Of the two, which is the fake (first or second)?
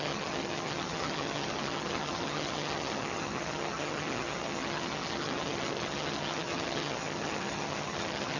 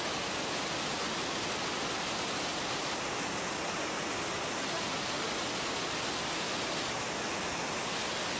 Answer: first